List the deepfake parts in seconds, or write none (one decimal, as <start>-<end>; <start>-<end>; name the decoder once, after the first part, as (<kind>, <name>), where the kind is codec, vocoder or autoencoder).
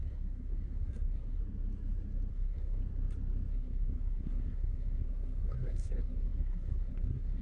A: 0.0-1.4 (codec, SNAC); 2.3-2.8; 3.5-7.4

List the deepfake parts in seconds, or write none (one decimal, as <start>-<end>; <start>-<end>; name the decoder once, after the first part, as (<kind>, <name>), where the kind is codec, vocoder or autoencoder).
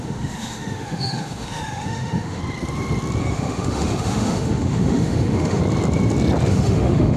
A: 0.0-2.4 (autoencoder, DAC-VAE); 3.2-5.6; 6.5-7.2